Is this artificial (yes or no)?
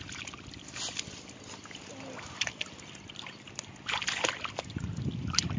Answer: no